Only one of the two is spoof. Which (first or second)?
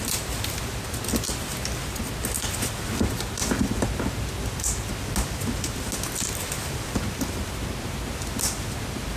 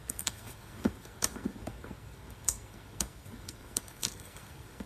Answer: second